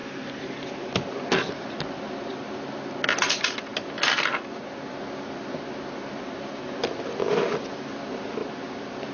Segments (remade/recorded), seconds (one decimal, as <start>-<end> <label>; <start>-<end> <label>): 0.0-9.1 recorded